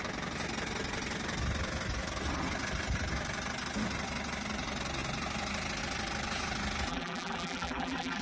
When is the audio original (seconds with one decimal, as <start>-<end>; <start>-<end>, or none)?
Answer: 0.0-6.9